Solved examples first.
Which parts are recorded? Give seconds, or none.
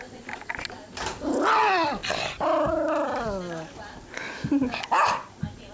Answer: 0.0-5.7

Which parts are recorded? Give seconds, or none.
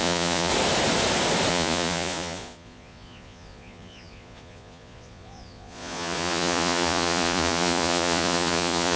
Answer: 0.5-1.5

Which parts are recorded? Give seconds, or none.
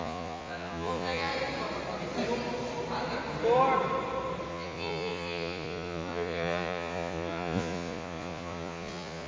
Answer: 1.3-4.5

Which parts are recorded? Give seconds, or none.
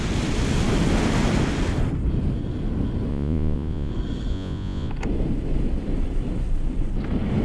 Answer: 0.0-3.1; 3.9-4.3; 4.9-7.4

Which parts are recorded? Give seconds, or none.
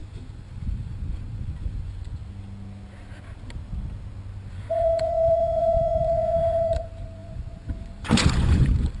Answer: 2.2-4.5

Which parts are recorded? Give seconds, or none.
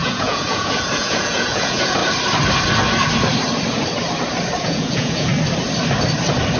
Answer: 2.0-4.6; 5.3-6.6